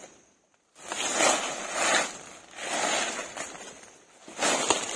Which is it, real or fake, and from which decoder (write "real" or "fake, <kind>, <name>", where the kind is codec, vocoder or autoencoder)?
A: real